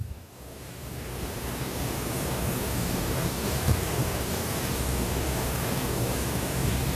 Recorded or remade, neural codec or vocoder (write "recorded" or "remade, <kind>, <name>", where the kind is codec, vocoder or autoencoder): remade, codec, DAC